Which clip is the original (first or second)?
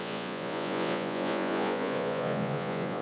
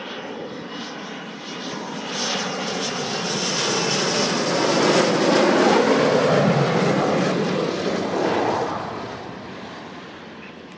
second